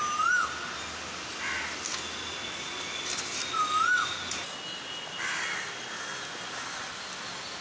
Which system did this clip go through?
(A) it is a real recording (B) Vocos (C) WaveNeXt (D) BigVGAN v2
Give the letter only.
A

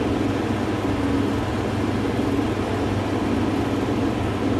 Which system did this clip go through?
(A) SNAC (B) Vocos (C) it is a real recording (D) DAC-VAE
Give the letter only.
C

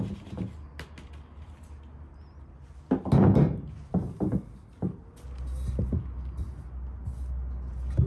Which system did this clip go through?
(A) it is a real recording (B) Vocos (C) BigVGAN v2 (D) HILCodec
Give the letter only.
A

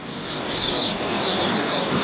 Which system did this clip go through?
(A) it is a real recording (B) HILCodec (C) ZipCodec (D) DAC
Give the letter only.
D